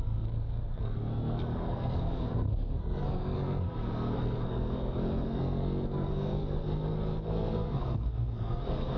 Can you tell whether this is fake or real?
fake